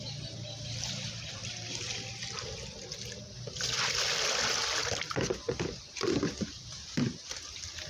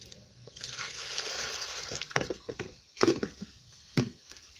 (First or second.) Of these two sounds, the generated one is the second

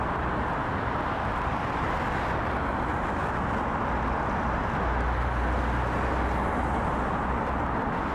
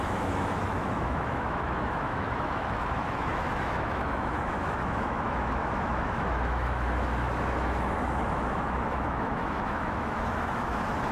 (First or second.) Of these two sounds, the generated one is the second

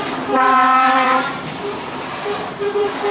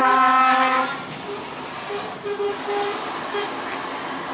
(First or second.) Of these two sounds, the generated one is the first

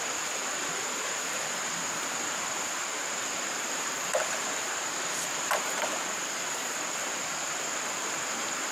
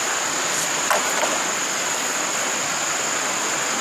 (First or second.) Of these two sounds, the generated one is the first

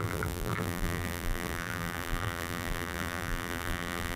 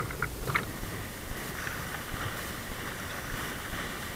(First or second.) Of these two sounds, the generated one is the first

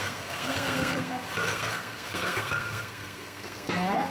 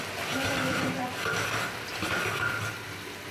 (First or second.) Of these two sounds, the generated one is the first